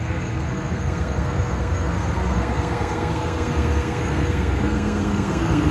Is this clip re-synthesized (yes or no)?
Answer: yes